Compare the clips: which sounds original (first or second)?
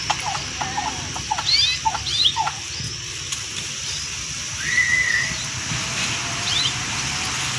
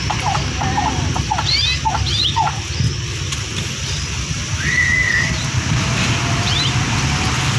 first